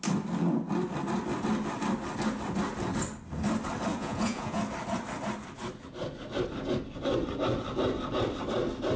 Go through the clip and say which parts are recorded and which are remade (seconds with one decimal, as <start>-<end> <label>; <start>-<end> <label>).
0.0-3.9 recorded; 3.9-4.6 remade; 4.6-9.0 recorded